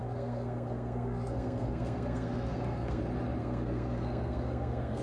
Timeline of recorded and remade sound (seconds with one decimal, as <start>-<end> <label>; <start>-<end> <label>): 0.0-3.0 remade; 3.0-3.4 recorded; 3.4-5.0 remade